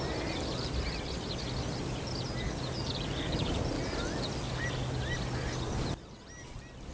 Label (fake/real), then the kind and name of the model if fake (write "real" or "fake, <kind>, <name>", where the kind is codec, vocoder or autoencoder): real